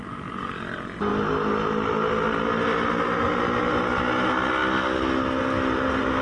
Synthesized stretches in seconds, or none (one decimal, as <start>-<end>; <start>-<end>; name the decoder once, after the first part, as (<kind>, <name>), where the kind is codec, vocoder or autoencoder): none